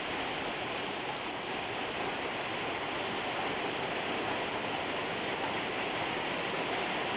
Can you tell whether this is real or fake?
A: real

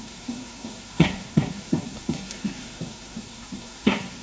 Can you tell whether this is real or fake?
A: fake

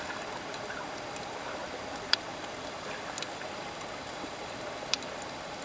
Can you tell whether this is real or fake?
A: fake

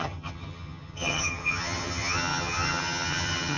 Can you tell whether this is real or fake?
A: fake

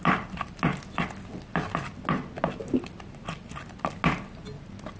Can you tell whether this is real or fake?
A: real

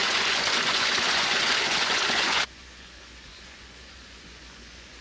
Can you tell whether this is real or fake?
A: fake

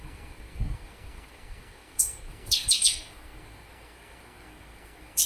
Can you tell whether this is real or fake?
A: fake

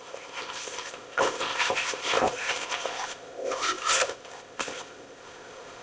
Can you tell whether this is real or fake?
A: fake